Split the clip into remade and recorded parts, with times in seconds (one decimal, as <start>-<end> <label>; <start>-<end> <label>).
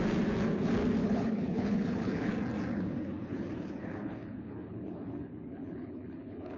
0.0-1.0 recorded; 1.0-2.3 remade; 2.3-2.7 recorded; 2.7-6.6 remade